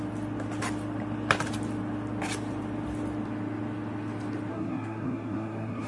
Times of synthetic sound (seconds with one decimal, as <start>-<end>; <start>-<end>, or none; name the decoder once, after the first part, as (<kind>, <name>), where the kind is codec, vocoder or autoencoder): 4.5-5.9 (codec, SNAC)